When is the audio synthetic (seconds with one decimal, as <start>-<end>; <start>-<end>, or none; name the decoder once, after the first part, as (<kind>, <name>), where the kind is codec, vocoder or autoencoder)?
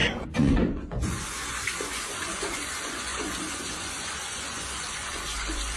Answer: 0.0-5.8 (vocoder, Vocos)